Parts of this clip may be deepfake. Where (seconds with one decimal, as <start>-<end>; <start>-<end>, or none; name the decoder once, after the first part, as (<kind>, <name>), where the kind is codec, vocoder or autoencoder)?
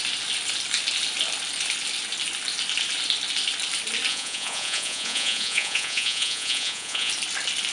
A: 4.1-7.1 (vocoder, Vocos)